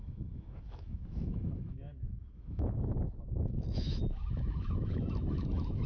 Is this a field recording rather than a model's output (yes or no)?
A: no